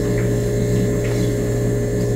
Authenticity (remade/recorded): recorded